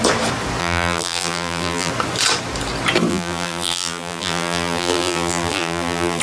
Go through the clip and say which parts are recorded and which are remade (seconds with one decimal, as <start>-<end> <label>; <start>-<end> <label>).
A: 0.0-0.6 recorded; 0.6-1.9 remade; 1.9-3.1 recorded; 3.1-6.2 remade